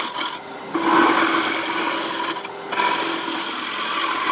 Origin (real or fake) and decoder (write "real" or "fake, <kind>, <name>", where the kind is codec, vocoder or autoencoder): real